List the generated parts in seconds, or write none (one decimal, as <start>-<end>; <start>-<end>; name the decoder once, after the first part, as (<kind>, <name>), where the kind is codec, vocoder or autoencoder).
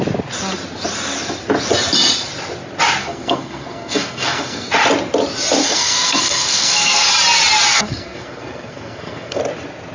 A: 3.0-4.7 (codec, SNAC); 5.6-7.1; 7.7-9.4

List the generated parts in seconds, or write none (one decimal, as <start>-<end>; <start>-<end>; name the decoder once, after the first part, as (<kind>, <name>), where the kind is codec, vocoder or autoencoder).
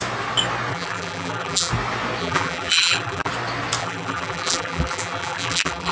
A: 0.7-1.7 (vocoder, BigVGAN v2); 2.2-3.3; 3.8-5.9